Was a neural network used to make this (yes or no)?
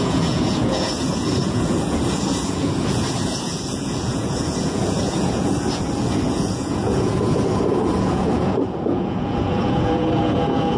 yes